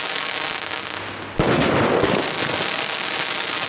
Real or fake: real